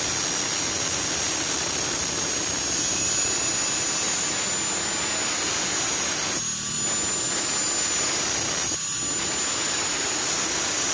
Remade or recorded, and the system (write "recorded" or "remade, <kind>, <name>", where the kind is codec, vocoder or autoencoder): recorded